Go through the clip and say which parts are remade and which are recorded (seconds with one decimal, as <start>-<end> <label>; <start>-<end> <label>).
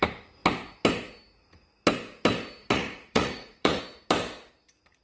0.0-2.6 recorded; 2.6-3.8 remade; 3.8-5.0 recorded